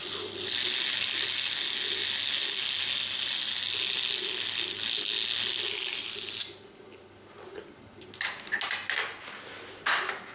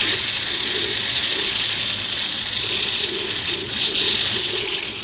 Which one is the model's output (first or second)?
second